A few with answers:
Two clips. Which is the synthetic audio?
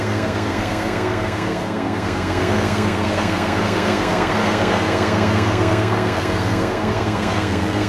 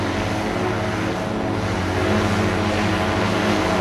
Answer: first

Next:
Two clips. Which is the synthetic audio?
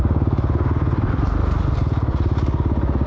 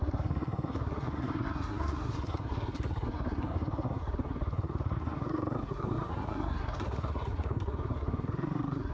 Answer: second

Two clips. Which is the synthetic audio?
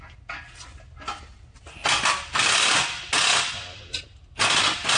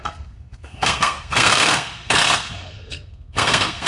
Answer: second